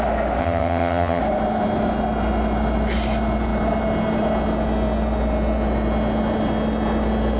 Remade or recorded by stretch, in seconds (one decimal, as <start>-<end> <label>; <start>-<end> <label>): 0.0-0.4 recorded; 0.4-1.2 remade; 1.2-7.4 recorded